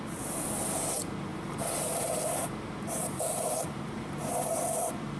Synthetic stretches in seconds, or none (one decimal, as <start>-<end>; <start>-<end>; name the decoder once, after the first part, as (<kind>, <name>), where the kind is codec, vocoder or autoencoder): 1.3-4.4 (vocoder, BigVGAN v2)